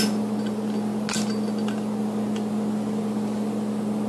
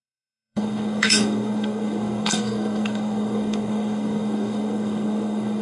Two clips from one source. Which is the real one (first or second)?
first